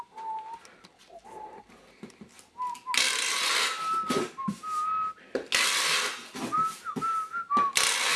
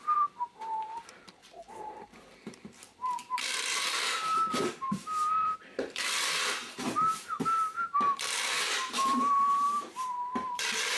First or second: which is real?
first